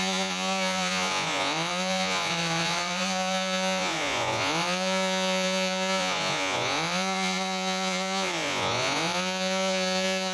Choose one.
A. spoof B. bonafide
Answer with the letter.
A